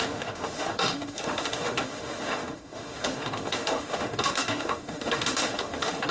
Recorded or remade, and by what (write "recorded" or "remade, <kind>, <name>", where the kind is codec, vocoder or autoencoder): remade, autoencoder, DAC-VAE